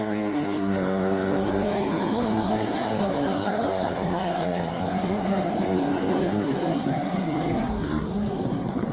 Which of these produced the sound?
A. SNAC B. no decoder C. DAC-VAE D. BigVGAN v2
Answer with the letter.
A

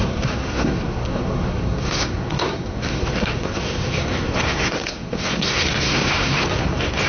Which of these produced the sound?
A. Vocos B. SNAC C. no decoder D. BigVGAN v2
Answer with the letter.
B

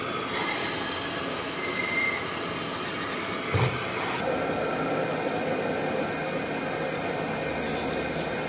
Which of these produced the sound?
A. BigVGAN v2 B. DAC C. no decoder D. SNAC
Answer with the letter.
C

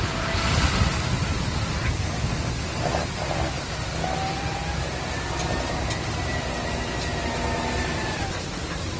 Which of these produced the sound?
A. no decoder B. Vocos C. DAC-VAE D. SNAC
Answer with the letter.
A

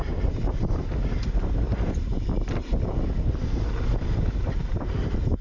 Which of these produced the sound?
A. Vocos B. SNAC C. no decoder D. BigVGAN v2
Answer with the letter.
C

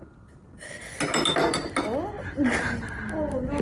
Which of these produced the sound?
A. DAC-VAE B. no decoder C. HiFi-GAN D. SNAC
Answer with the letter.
B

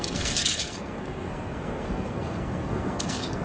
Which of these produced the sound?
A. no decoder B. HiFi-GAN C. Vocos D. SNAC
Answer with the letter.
D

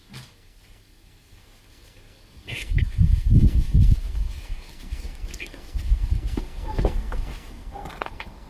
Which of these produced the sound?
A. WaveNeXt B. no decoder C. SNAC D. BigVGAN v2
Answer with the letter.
C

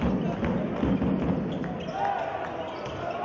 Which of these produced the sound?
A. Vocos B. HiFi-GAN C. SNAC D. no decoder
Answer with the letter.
D